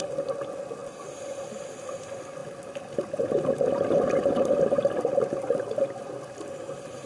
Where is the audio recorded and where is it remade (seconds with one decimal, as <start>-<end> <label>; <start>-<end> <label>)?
0.0-7.1 recorded